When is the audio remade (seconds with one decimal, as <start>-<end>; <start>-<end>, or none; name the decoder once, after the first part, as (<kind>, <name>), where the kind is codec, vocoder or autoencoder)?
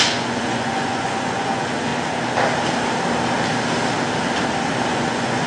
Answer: 0.0-1.9 (vocoder, Vocos); 4.9-5.5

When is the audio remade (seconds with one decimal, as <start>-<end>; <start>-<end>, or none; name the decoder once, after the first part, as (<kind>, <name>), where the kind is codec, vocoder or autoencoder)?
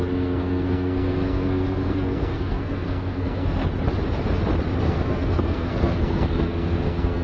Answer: 0.0-3.6 (codec, SNAC); 4.8-7.2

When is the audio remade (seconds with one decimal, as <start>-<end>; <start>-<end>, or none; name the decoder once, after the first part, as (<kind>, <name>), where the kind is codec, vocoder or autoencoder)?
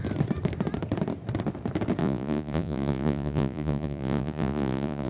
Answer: 2.0-5.1 (vocoder, Vocos)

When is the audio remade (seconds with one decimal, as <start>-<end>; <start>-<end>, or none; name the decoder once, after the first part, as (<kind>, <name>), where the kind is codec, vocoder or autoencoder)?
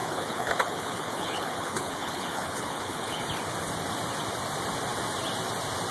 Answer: 0.0-3.2 (codec, HILCodec)